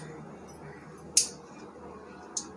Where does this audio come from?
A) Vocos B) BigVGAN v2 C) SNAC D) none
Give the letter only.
D